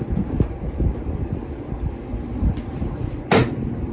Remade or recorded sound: recorded